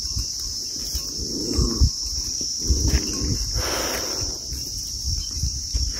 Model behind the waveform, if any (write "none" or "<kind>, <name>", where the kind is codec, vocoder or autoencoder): vocoder, BigVGAN v2